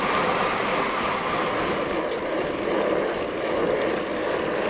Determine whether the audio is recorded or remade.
recorded